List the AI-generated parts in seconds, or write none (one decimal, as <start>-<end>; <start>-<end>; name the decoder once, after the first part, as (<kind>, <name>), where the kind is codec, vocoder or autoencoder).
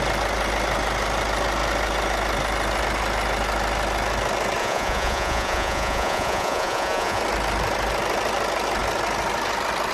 4.6-7.2 (vocoder, Vocos)